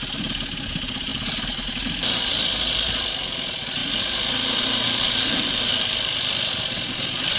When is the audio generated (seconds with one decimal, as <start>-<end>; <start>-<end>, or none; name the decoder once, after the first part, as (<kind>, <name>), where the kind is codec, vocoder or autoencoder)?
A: none